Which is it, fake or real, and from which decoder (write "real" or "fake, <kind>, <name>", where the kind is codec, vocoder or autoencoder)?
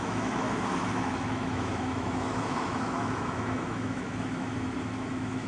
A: fake, autoencoder, DAC-VAE